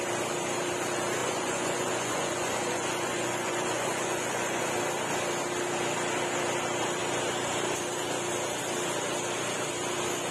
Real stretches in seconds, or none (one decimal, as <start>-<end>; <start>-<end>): 0.0-1.2; 4.7-10.3